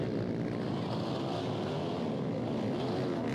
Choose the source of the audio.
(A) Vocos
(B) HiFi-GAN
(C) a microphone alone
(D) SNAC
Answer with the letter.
C